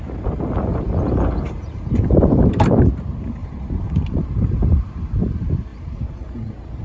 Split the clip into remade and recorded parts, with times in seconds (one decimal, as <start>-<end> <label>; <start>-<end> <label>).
0.0-0.7 recorded; 0.7-2.8 remade; 2.8-3.4 recorded; 3.4-5.0 remade; 5.0-5.7 recorded; 5.7-6.8 remade